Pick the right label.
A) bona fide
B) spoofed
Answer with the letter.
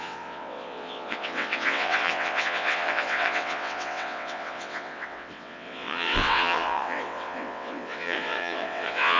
B